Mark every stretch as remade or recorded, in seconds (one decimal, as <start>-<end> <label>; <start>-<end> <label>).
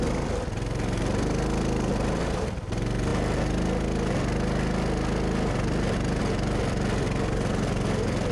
0.0-8.3 recorded